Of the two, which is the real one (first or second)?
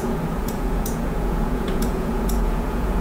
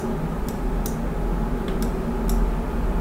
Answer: second